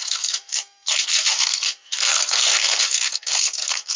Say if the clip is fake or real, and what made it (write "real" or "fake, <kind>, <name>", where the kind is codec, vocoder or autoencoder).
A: fake, codec, SNAC